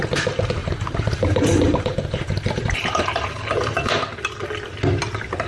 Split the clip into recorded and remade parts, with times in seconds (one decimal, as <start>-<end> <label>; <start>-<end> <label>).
0.0-0.6 recorded; 0.6-3.9 remade; 3.9-5.5 recorded